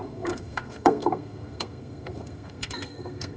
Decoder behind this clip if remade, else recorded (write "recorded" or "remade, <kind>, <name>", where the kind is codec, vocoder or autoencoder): remade, codec, SNAC